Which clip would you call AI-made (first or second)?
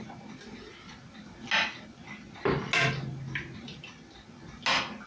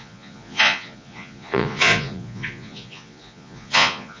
second